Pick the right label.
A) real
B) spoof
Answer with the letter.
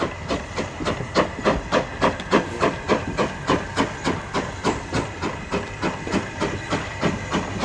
A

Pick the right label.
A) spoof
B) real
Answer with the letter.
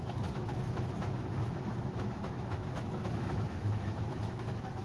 A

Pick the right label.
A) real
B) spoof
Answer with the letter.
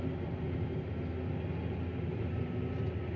A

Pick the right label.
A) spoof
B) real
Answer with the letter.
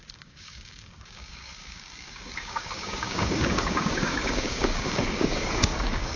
A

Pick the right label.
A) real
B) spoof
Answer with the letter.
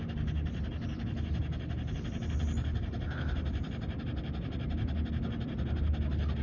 A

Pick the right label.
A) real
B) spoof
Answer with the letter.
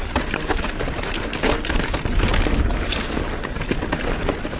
A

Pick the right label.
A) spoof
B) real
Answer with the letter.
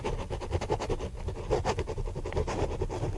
B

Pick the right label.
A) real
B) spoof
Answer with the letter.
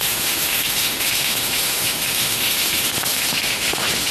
B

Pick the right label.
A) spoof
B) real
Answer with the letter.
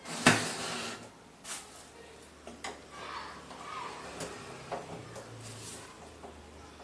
B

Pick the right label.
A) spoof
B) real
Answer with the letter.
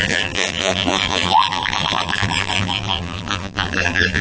A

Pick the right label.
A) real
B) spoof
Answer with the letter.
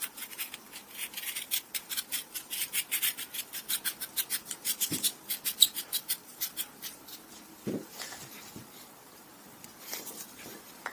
B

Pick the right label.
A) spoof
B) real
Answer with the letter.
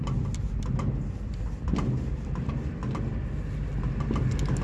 B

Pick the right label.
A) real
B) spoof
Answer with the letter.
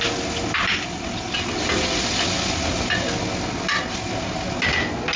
A